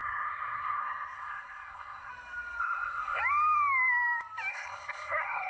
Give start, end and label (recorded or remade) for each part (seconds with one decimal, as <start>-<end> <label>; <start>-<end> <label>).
0.0-2.1 remade; 2.1-2.6 recorded; 2.6-3.2 remade; 3.2-4.5 recorded; 4.5-5.5 remade